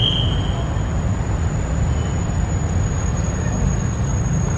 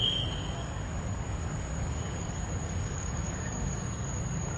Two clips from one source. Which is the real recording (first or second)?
first